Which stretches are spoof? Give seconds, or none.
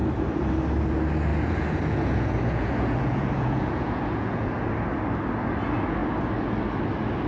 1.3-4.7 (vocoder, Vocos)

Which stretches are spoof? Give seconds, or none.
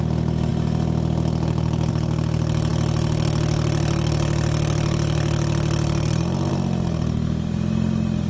none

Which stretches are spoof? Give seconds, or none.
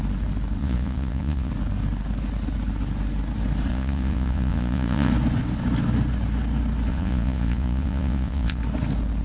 0.6-1.5 (vocoder, Vocos); 3.7-5.1; 6.9-8.6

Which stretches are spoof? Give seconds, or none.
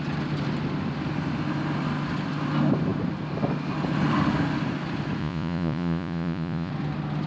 5.2-6.7 (vocoder, Vocos)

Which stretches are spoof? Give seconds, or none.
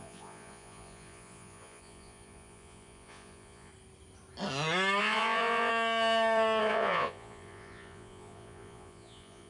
0.0-3.7 (vocoder, Vocos); 5.0-5.7; 6.6-9.5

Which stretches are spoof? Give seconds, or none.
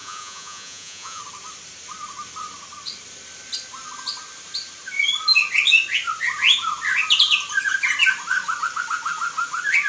0.0-1.2 (vocoder, Vocos)